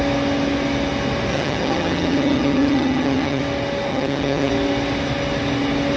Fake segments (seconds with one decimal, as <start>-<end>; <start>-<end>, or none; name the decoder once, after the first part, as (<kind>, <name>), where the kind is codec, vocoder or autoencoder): 1.3-3.4 (vocoder, HiFi-GAN); 3.9-4.5